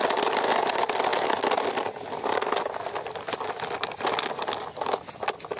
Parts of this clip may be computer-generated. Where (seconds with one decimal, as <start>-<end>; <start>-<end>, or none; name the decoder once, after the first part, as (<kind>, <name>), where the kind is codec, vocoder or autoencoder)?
none